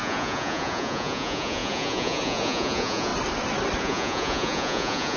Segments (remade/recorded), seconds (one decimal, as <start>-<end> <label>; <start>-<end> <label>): 0.0-3.1 remade; 3.1-3.8 recorded; 3.8-5.2 remade